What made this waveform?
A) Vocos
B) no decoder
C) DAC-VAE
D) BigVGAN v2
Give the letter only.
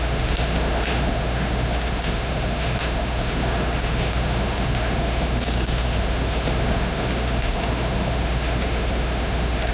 C